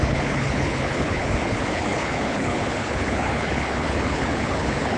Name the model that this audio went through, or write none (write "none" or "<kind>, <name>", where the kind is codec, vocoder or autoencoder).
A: codec, HILCodec